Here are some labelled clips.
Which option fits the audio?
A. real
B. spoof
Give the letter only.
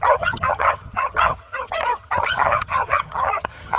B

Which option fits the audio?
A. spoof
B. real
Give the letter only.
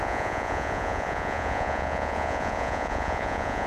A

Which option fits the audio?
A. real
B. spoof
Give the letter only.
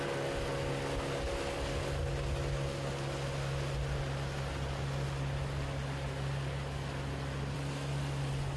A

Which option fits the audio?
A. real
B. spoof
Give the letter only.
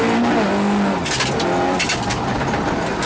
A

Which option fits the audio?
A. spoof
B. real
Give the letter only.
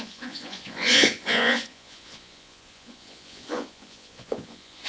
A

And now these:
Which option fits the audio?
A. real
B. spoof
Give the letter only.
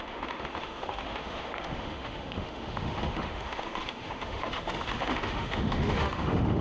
B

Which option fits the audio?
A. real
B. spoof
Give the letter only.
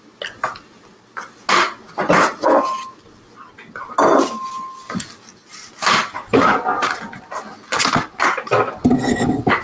A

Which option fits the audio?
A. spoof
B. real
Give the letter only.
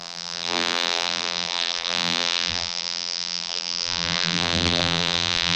A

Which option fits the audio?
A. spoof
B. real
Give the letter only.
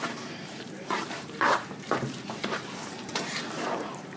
A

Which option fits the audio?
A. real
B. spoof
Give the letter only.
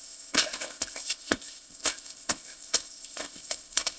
B